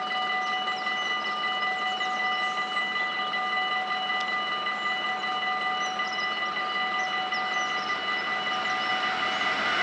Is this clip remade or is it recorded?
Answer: recorded